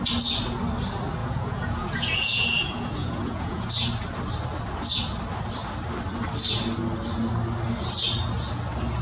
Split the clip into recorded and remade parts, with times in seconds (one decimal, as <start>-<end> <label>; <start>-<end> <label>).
0.0-1.2 recorded; 1.2-3.7 remade; 3.7-9.0 recorded